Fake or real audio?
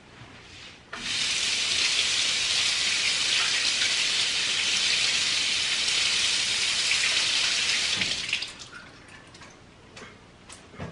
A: real